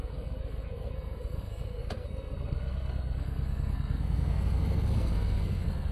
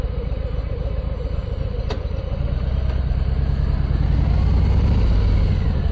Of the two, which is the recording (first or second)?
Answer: second